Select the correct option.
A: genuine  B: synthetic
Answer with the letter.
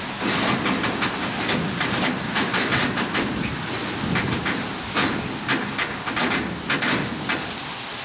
A